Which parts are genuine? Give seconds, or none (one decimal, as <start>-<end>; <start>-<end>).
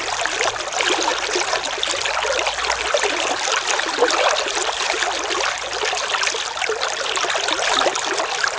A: 0.0-8.6